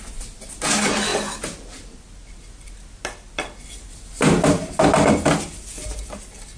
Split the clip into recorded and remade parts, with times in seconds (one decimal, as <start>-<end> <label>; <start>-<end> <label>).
0.0-6.6 recorded

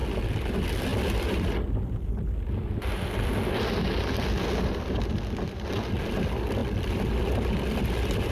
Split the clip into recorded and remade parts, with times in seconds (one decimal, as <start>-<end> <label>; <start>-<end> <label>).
0.0-8.3 recorded

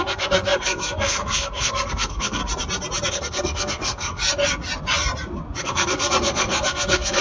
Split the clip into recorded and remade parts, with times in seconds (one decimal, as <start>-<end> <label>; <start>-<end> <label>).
0.0-2.4 remade; 2.4-3.1 recorded; 3.1-4.2 remade; 4.2-5.6 recorded; 5.6-7.2 remade